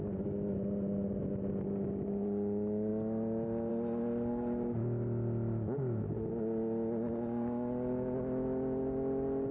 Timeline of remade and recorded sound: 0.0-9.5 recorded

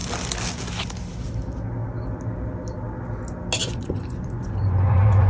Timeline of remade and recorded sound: 0.0-3.6 recorded; 3.6-5.3 remade

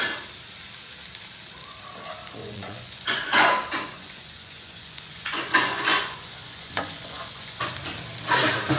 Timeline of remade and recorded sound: 0.0-2.4 recorded; 2.4-7.7 remade; 7.7-8.8 recorded

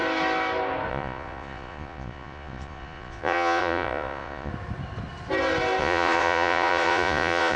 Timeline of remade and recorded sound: 0.0-0.9 recorded; 0.9-4.5 remade; 4.5-5.8 recorded; 5.8-7.6 remade

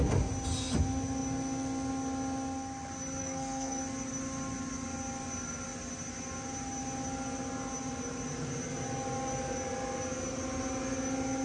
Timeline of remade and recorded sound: 0.0-3.2 recorded; 3.2-3.8 remade; 3.8-11.4 recorded